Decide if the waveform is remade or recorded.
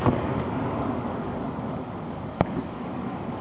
remade